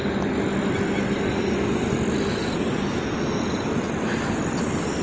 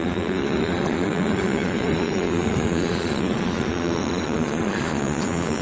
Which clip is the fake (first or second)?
second